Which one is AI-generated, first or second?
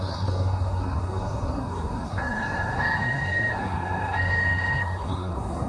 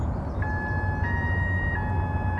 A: first